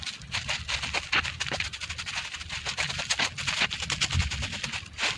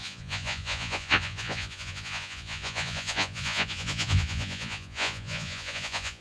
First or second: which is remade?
second